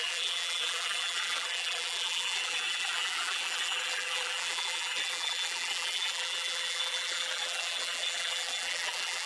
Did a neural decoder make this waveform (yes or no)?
yes